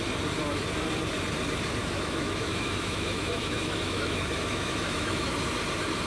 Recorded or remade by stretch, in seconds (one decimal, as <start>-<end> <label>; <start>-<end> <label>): 0.0-1.8 recorded; 1.8-5.3 remade; 5.3-6.1 recorded